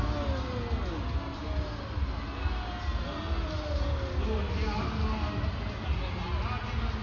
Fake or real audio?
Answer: real